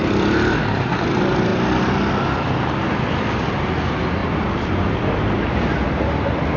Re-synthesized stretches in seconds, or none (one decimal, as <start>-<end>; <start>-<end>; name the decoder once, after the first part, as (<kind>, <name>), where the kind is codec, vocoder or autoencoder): 0.0-0.6 (vocoder, BigVGAN v2); 4.2-5.0